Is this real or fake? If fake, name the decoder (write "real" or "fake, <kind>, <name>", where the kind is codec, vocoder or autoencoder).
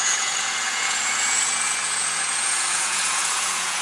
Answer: fake, vocoder, Vocos